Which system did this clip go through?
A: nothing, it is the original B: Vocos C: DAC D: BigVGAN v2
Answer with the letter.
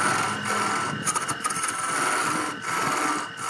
A